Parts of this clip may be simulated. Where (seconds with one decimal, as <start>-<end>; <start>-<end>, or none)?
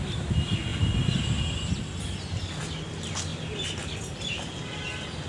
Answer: none